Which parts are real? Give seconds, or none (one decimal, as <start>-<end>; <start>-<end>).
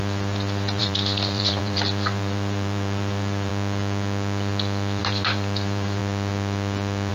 3.5-5.0; 6.0-7.1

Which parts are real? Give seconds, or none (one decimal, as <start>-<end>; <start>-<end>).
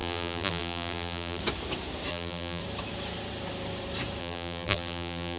1.4-2.1; 2.6-4.2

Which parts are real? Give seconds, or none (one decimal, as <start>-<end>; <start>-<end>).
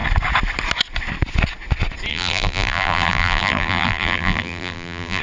0.0-2.1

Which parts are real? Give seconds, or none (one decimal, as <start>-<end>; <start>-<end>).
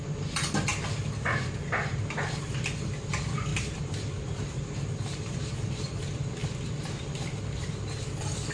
0.0-3.5; 5.9-8.5